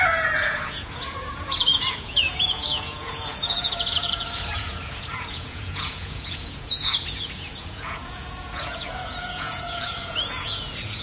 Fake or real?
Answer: fake